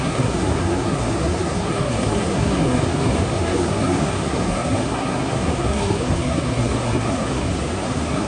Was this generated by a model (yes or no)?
yes